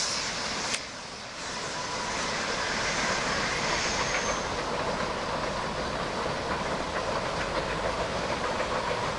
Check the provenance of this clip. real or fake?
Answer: real